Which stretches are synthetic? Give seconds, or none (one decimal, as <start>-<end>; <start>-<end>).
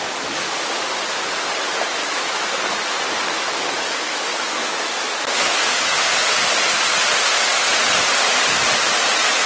2.0-2.6; 3.3-6.1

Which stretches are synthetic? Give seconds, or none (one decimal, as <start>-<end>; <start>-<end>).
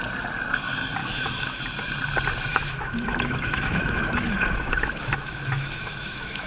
1.0-1.6; 2.5-6.5